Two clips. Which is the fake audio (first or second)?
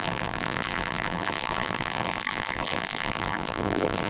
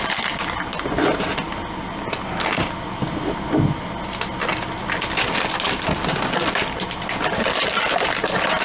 first